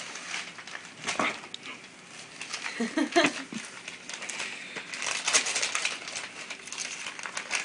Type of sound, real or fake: real